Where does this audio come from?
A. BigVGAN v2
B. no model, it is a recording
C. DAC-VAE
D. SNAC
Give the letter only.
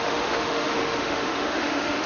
C